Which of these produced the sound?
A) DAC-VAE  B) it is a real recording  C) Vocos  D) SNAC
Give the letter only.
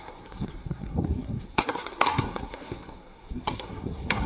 D